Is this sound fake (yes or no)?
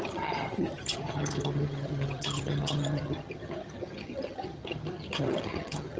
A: yes